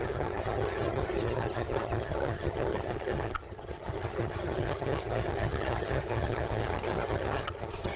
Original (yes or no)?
no